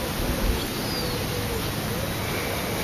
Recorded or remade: recorded